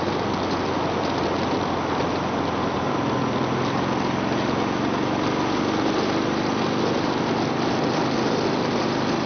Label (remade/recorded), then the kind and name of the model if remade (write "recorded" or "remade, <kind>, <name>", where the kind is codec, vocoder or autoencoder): recorded